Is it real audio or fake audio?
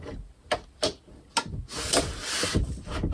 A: real